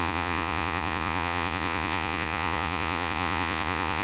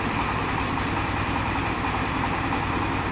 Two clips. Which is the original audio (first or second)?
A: second